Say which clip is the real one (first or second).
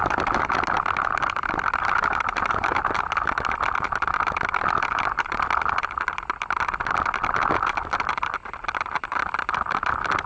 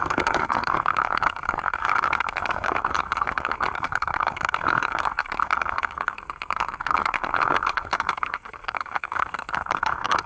first